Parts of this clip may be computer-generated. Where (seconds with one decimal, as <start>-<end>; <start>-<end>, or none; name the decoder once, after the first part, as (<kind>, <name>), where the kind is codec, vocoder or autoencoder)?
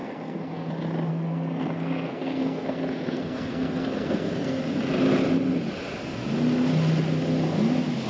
0.0-0.7 (codec, SNAC); 1.1-4.6